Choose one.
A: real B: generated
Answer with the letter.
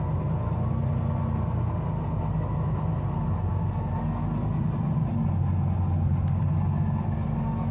A